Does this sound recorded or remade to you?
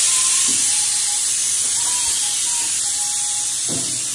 recorded